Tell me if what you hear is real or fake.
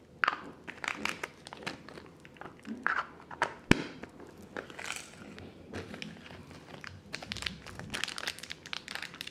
real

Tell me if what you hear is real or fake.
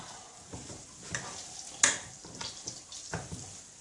real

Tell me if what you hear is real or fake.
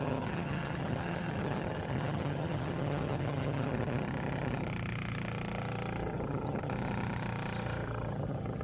fake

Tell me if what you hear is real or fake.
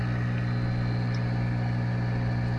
real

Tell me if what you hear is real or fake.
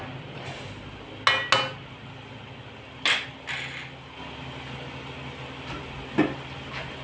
real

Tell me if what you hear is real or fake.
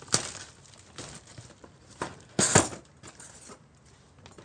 real